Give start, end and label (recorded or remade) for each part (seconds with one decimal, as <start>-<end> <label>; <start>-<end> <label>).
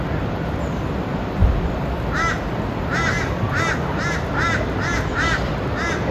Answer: 0.0-6.1 recorded